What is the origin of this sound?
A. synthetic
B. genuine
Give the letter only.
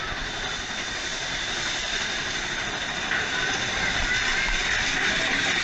A